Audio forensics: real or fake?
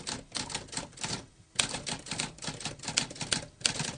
real